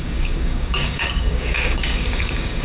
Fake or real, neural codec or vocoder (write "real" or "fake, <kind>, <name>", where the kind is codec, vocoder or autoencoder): fake, codec, DAC